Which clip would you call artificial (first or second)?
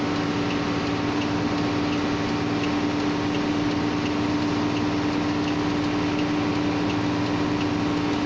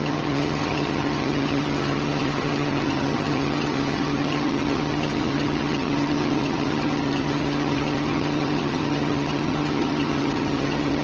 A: second